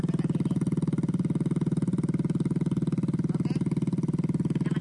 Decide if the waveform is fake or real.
real